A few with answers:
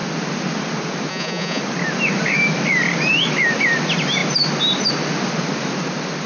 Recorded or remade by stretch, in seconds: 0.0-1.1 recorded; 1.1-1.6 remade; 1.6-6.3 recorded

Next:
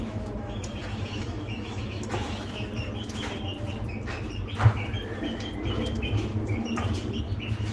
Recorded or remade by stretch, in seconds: 0.0-2.7 remade; 2.7-5.7 recorded; 5.7-6.3 remade; 6.3-7.2 recorded; 7.2-7.7 remade